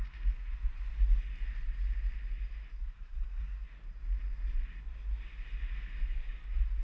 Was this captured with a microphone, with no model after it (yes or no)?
yes